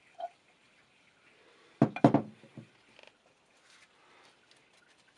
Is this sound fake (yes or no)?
no